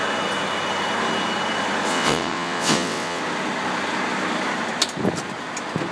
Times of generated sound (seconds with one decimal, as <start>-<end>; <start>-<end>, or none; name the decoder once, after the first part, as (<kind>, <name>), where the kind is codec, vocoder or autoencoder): 1.9-3.2 (vocoder, WaveNeXt)